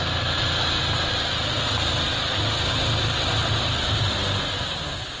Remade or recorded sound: recorded